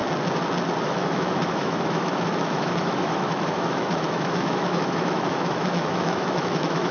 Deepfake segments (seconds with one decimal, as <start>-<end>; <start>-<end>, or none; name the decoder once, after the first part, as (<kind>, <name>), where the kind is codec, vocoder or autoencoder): 0.8-6.9 (autoencoder, DAC-VAE)